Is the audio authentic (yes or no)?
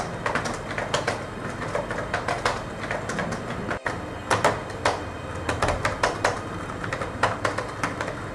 yes